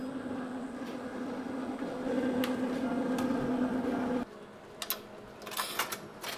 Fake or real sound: real